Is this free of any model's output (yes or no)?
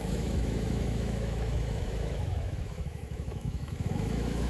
no